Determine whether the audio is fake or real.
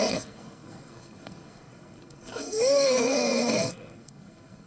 fake